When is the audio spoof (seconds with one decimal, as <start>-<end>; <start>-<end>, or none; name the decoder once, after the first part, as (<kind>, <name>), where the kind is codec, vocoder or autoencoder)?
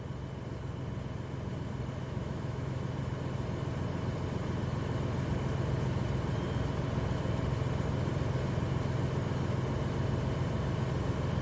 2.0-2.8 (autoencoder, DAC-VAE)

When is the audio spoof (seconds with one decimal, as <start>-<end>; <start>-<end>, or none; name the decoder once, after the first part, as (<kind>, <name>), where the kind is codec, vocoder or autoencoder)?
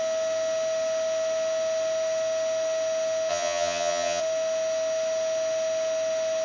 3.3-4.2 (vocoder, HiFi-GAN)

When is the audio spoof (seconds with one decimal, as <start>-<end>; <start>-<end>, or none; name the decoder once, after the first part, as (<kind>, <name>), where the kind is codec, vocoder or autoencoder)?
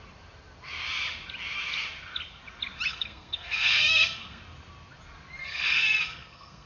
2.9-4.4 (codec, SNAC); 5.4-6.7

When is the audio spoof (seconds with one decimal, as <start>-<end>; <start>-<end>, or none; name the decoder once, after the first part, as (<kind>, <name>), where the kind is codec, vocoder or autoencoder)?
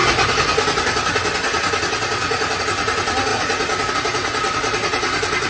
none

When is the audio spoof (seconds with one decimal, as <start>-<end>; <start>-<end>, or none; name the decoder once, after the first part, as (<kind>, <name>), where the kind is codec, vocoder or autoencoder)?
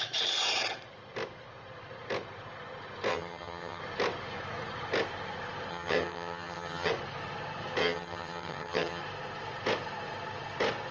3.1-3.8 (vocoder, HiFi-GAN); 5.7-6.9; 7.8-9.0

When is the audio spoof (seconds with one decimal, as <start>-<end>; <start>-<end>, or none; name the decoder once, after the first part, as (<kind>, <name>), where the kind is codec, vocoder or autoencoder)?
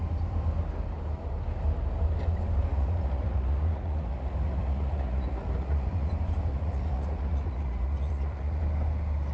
2.7-6.1 (vocoder, Vocos); 6.5-8.6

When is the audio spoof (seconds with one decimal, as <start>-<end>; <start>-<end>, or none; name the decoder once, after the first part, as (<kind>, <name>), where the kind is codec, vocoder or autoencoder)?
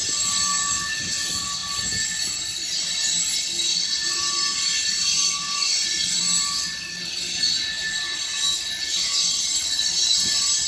5.4-6.2 (vocoder, Vocos)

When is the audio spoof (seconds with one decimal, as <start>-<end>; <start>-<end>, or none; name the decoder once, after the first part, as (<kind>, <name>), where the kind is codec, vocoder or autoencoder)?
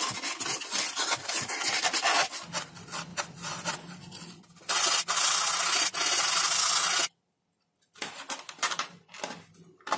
none